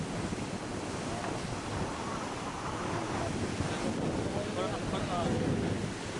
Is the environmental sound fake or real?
real